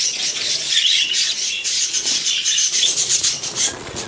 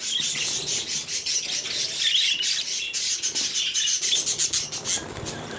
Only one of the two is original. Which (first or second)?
second